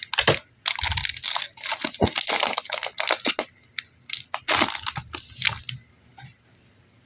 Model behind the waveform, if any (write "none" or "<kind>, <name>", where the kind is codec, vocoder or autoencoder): none